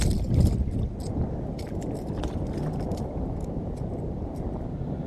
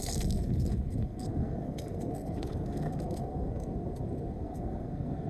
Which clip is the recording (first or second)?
first